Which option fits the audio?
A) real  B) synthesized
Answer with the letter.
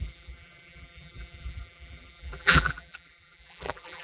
B